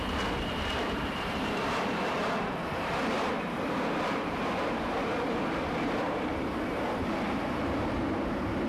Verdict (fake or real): fake